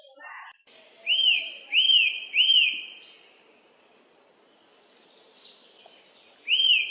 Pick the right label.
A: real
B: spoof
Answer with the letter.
A